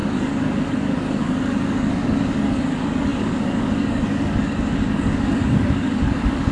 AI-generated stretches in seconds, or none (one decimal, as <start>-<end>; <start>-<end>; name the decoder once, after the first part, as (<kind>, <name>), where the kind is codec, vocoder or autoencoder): 0.0-6.5 (codec, DAC)

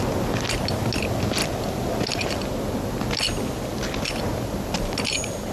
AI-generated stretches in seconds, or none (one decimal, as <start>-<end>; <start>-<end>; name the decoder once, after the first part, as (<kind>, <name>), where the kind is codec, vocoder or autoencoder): none

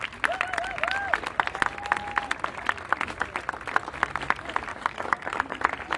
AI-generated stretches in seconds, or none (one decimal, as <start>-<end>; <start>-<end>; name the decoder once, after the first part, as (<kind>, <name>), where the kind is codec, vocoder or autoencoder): 4.7-5.6 (codec, DAC)

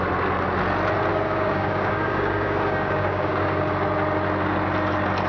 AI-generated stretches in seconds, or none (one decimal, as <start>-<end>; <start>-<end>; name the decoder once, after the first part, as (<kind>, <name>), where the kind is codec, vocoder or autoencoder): 1.1-3.7 (codec, DAC)

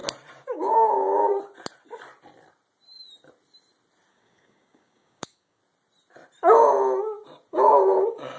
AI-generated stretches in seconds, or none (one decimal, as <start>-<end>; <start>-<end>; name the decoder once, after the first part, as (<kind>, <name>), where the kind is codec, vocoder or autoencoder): 0.5-1.3 (codec, DAC); 4.1-5.6; 7.5-8.4

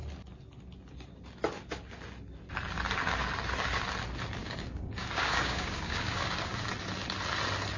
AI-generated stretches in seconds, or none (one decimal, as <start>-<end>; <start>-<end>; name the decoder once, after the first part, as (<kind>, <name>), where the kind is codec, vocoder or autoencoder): 4.4-6.7 (codec, DAC)

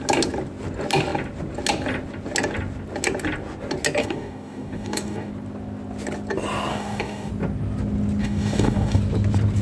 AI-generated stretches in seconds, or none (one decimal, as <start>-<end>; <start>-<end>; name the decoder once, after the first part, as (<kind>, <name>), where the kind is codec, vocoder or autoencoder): 4.0-5.3 (codec, DAC); 6.7-7.3; 8.2-9.0

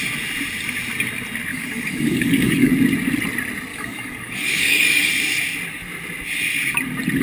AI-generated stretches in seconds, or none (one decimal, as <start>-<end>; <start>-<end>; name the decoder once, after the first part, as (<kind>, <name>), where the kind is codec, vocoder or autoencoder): 1.5-2.7 (codec, DAC); 3.7-5.1